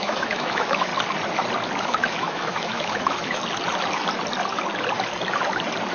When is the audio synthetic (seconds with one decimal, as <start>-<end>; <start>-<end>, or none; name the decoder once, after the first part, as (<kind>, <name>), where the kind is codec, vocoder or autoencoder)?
0.0-0.9 (autoencoder, DAC-VAE); 1.8-3.4